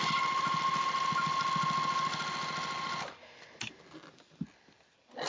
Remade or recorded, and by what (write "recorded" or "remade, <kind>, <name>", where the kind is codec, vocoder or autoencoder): recorded